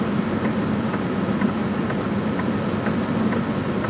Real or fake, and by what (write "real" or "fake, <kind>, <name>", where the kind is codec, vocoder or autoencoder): real